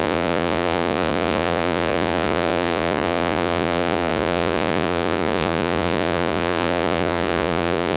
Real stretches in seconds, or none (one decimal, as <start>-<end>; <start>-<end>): none